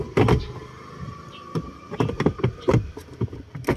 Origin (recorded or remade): recorded